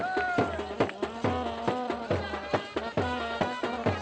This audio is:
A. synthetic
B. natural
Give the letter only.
B